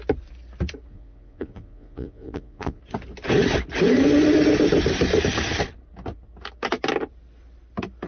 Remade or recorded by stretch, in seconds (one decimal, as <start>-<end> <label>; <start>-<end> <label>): 0.0-0.9 recorded; 0.9-2.8 remade; 2.8-8.1 recorded